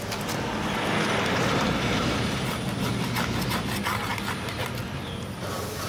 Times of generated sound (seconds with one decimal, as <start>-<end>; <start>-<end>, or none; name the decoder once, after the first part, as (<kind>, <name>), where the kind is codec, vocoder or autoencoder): none